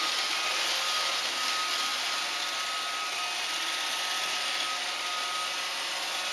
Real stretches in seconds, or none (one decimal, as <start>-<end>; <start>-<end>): 0.0-6.3